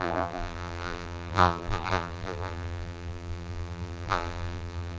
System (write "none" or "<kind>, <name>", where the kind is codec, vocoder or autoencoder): vocoder, BigVGAN v2